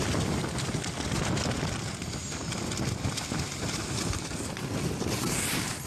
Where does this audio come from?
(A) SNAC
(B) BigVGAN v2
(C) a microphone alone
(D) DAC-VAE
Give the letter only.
C